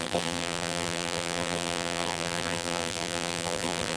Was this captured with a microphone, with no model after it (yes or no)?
no